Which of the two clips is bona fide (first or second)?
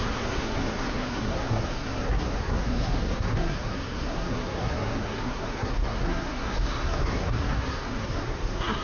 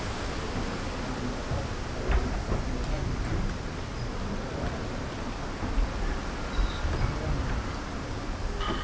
second